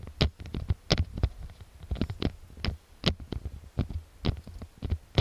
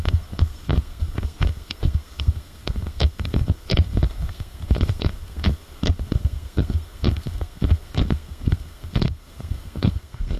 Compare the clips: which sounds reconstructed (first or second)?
second